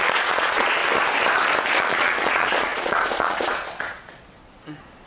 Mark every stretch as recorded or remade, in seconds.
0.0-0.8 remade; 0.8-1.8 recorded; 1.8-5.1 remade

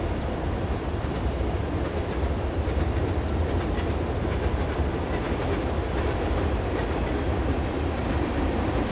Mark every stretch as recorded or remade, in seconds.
0.0-6.8 remade; 6.8-8.0 recorded; 8.0-8.9 remade

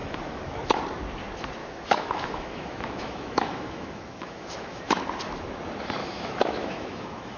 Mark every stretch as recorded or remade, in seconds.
0.0-0.8 remade; 0.8-1.6 recorded; 1.6-4.8 remade; 4.8-6.0 recorded; 6.0-7.4 remade

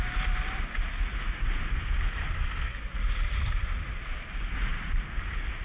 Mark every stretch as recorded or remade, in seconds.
0.0-5.6 recorded